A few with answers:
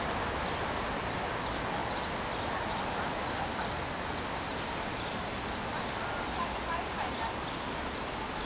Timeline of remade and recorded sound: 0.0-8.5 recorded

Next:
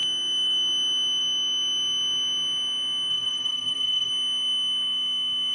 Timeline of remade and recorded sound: 0.0-3.1 recorded; 3.1-4.1 remade; 4.1-5.5 recorded

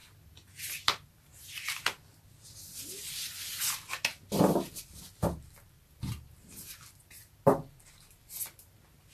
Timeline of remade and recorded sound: 0.0-9.1 recorded

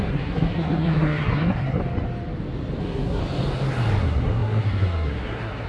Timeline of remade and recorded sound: 0.0-1.8 remade; 1.8-2.8 recorded; 2.8-3.2 remade; 3.2-4.0 recorded; 4.0-5.7 remade

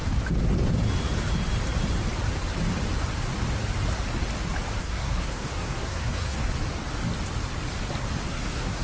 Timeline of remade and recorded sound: 0.0-4.8 recorded; 4.8-6.5 remade; 6.5-8.3 recorded; 8.3-8.8 remade

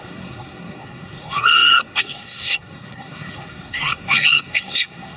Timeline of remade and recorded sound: 0.0-5.2 remade

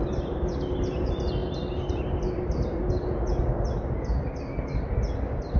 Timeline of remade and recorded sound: 0.0-5.6 recorded